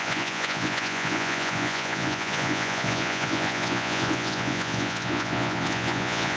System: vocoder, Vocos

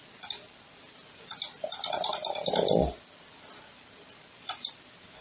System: none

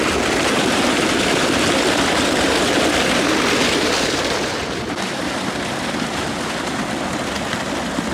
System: none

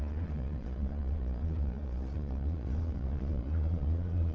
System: vocoder, Vocos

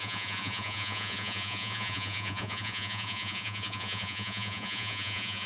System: vocoder, Vocos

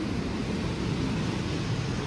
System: none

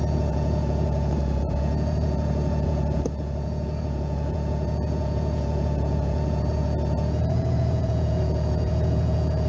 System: vocoder, Vocos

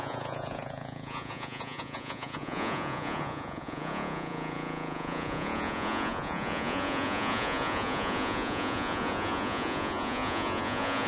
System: vocoder, Vocos